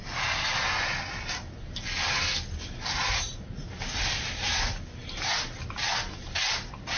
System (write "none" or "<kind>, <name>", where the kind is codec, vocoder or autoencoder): none